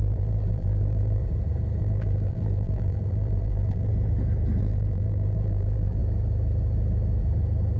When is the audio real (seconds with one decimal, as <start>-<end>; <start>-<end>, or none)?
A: 1.2-1.8; 3.9-4.6; 6.0-7.8